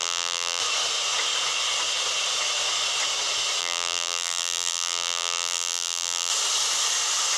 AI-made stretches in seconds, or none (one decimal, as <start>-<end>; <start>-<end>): 0.0-0.6; 3.6-6.3